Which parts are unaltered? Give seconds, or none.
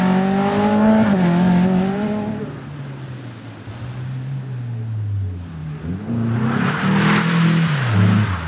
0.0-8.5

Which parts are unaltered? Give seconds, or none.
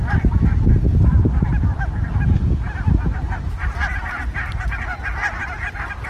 0.0-6.1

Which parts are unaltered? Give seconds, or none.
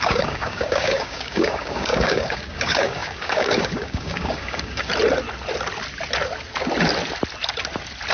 4.9-8.1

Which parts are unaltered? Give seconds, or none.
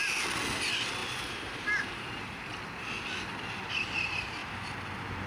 0.0-1.0; 2.5-4.4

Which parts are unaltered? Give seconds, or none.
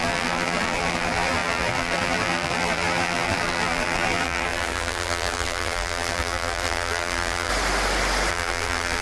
7.5-8.3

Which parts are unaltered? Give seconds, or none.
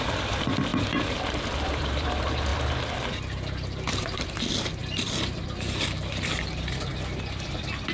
2.5-3.9